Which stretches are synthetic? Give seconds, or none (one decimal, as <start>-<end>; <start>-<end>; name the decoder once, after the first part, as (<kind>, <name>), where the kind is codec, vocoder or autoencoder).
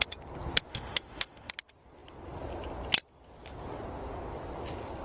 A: 0.7-1.5 (autoencoder, DAC-VAE)